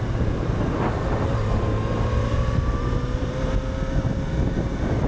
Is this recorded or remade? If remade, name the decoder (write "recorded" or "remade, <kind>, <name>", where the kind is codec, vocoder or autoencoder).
recorded